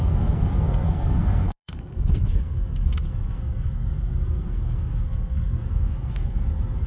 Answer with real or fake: fake